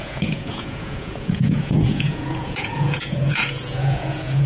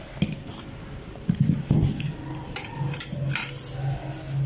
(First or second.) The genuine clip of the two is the second